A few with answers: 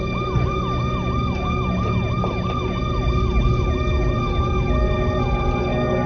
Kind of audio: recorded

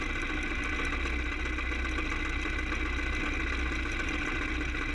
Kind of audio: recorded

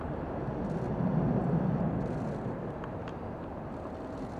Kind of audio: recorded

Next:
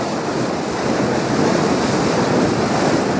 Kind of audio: remade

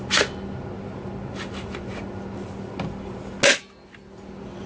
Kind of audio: recorded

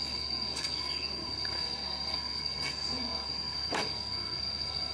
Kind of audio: remade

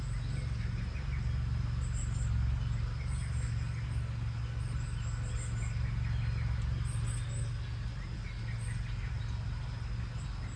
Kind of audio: recorded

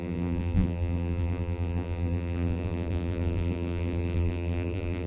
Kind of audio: remade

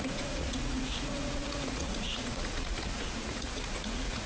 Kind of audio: remade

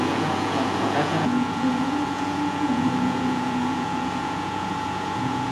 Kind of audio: remade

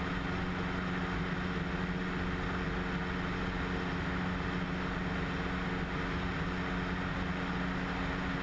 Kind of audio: recorded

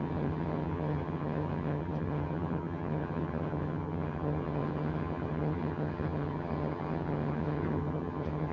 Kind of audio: remade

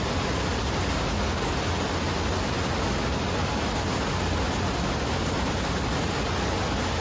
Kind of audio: recorded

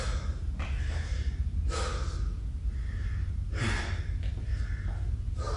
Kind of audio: recorded